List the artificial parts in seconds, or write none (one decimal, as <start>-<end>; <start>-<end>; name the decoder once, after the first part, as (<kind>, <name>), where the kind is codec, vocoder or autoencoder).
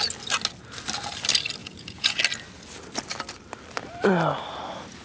1.6-2.2 (vocoder, Vocos)